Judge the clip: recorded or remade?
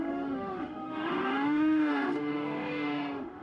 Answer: remade